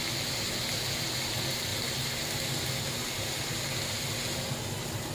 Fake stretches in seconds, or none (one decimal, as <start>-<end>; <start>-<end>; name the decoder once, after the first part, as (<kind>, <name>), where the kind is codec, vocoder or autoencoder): none